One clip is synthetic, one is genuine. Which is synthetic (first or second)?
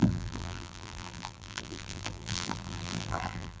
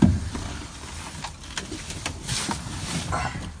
first